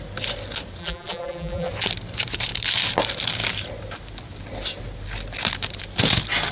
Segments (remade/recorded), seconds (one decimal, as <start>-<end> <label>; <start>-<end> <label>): 0.0-0.8 recorded; 0.8-1.7 remade; 1.7-6.5 recorded